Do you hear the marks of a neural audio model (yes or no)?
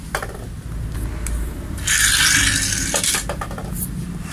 no